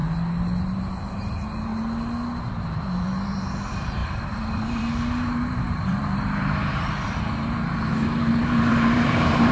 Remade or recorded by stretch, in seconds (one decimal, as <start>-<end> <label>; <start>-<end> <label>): 0.0-0.6 recorded; 0.6-1.7 remade; 1.7-2.4 recorded; 2.4-9.5 remade